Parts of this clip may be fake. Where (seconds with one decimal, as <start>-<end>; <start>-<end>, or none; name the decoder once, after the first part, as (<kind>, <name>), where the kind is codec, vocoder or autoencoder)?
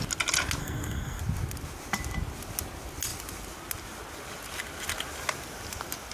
0.6-1.2 (codec, SNAC)